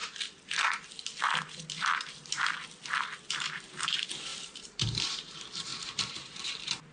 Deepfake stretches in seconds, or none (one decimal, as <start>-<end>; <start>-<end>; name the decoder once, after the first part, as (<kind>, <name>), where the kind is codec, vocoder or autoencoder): 3.3-6.9 (vocoder, BigVGAN v2)